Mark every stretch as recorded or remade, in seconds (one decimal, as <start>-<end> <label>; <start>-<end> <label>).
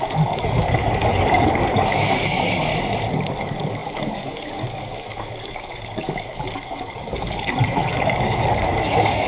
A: 0.0-2.7 remade; 2.7-3.3 recorded; 3.3-9.3 remade